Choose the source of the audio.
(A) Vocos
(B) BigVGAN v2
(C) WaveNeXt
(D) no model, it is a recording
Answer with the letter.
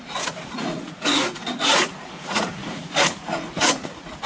A